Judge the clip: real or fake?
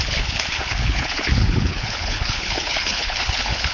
fake